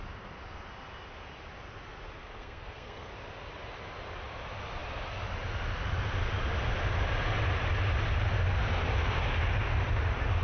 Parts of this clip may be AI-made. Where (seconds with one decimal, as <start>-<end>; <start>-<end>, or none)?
2.2-3.1